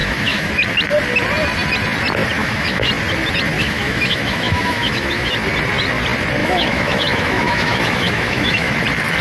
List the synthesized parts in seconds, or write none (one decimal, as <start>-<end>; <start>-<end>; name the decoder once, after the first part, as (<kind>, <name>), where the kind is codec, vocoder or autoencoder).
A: 0.0-0.5 (autoencoder, DAC-VAE); 2.4-2.9; 3.6-5.3; 6.4-8.7